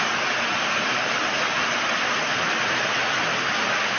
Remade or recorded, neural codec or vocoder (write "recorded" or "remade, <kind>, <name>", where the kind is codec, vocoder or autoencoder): recorded